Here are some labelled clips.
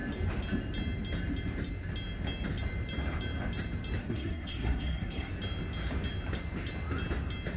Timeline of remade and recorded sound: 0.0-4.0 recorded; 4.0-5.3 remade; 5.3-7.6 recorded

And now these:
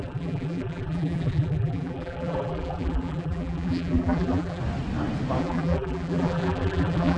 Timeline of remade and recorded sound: 0.0-4.6 remade; 4.6-5.4 recorded; 5.4-7.2 remade

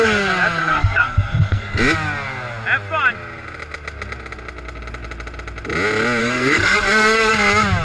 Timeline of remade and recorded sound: 0.0-0.6 recorded; 0.6-1.8 remade; 1.8-6.2 recorded; 6.2-7.3 remade; 7.3-7.8 recorded

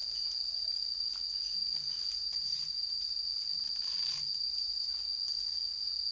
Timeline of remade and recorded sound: 0.0-2.2 recorded; 2.2-3.3 remade; 3.3-4.4 recorded; 4.4-4.9 remade; 4.9-6.1 recorded

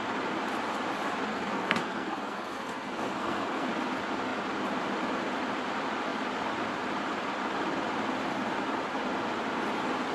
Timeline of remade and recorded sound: 0.0-1.3 recorded; 1.3-3.7 remade; 3.7-10.1 recorded